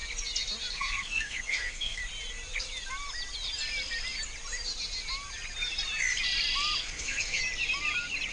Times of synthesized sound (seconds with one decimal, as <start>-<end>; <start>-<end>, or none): 0.7-2.0; 6.8-7.4